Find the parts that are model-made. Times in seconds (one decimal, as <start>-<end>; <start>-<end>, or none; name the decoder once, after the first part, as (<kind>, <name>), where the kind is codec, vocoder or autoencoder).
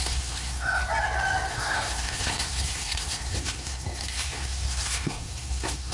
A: 0.0-0.8 (codec, SNAC); 1.5-5.9